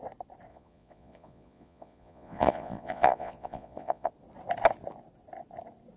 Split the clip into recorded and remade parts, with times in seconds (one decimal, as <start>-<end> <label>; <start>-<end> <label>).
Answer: 0.0-0.5 recorded; 0.5-4.1 remade; 4.1-6.0 recorded